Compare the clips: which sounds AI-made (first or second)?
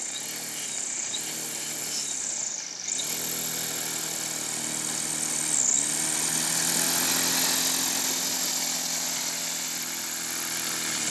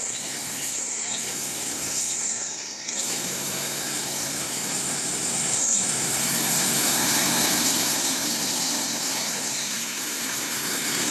second